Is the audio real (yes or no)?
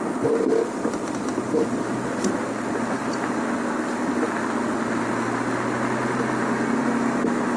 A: yes